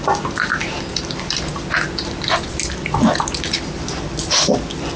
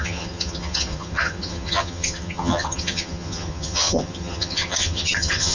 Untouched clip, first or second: first